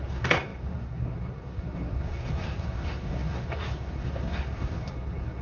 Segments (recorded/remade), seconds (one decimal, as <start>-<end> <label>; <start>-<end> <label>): 0.0-5.4 remade